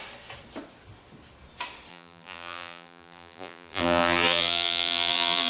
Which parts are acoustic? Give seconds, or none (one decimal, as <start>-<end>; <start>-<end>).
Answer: 0.0-1.9